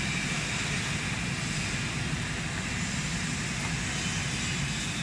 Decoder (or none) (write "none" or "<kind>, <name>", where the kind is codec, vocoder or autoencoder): none